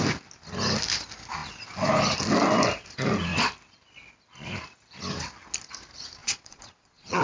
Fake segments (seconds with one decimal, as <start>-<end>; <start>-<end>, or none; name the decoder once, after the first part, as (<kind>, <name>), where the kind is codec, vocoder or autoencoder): 6.2-7.2 (vocoder, Vocos)